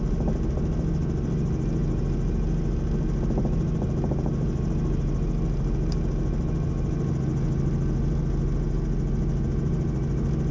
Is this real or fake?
real